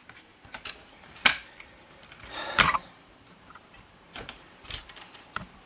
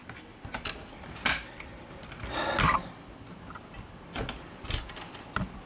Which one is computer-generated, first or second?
first